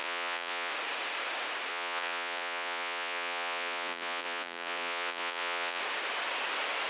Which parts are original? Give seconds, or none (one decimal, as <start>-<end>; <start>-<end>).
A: 0.7-1.7; 5.8-6.9